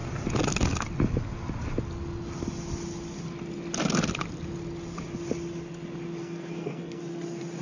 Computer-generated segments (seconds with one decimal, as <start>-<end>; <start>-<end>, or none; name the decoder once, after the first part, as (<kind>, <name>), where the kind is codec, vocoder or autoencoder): 6.2-7.0 (codec, SNAC)